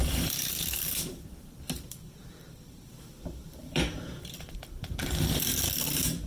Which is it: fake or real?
fake